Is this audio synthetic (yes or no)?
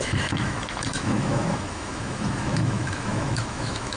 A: yes